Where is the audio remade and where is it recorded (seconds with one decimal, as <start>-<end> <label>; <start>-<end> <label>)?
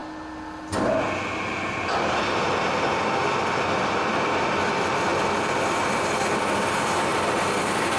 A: 0.0-8.0 recorded